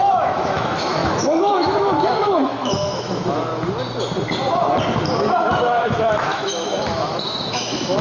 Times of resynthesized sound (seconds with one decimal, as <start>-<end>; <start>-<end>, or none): 0.0-3.5; 5.5-8.0